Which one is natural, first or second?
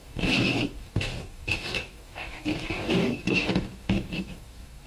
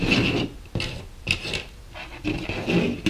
second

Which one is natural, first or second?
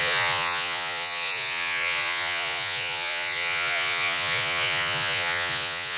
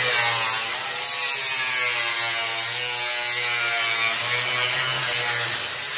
second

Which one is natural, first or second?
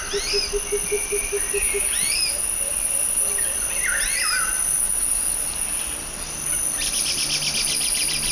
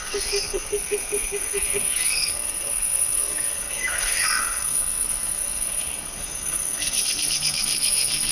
first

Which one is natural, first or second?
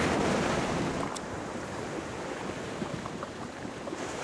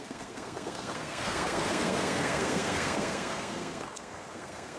first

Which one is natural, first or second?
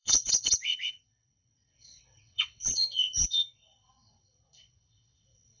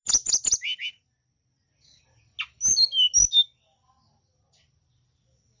second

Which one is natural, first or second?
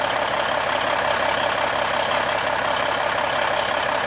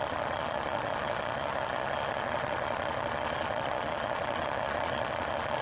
first